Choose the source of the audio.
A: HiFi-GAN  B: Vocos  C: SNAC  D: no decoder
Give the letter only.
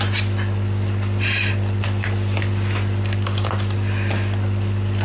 D